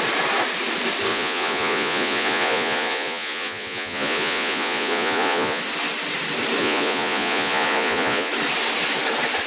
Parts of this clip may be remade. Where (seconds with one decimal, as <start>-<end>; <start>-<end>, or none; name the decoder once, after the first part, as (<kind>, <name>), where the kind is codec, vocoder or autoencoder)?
1.1-5.6 (vocoder, Vocos); 6.6-8.3